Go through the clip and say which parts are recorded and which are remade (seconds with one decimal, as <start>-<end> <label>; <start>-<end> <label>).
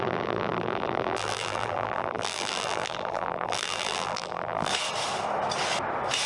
0.0-4.7 remade; 4.7-6.3 recorded